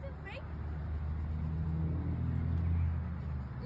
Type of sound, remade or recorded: recorded